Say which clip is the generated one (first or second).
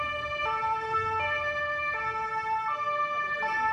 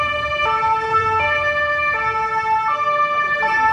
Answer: second